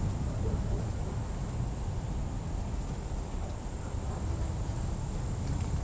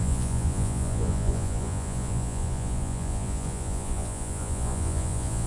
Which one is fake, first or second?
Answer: second